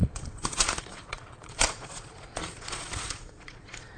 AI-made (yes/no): yes